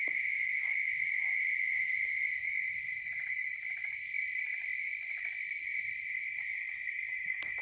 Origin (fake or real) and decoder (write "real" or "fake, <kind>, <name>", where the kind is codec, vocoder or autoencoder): real